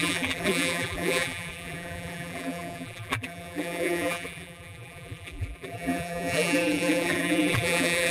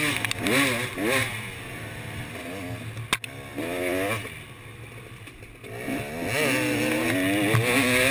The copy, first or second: first